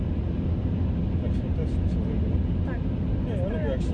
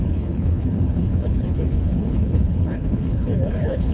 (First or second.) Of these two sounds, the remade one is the second